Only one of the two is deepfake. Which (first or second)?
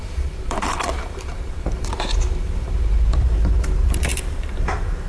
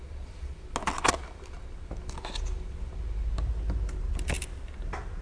first